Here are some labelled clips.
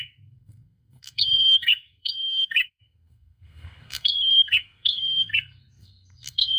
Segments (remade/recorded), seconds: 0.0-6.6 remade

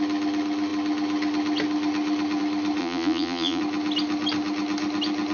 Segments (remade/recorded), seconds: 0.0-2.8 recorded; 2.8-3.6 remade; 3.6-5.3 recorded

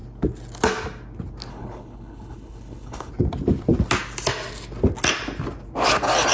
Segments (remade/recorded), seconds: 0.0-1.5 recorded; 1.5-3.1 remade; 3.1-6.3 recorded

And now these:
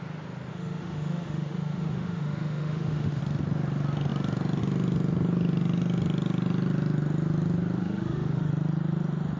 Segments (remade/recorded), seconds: 0.0-0.5 recorded; 0.5-3.2 remade; 3.2-7.8 recorded; 7.8-8.5 remade; 8.5-9.4 recorded

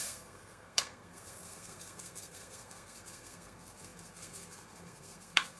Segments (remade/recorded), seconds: 0.0-5.6 remade